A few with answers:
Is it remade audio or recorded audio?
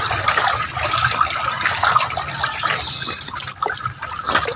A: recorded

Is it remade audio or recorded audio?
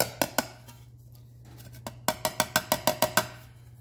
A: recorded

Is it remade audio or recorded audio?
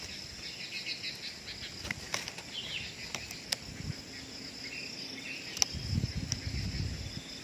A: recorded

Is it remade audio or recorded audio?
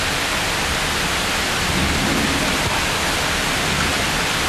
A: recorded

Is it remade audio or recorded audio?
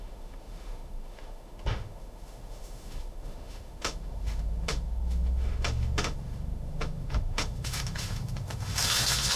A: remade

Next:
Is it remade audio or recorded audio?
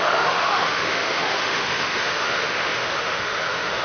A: remade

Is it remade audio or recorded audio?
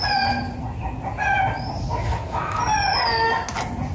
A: recorded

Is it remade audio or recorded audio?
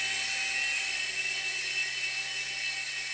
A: recorded